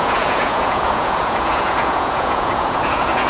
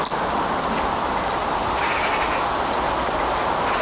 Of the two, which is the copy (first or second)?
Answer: first